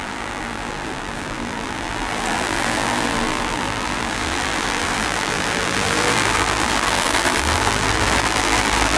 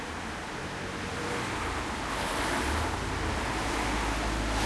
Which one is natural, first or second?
second